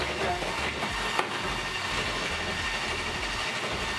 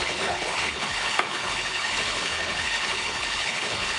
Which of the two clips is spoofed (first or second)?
second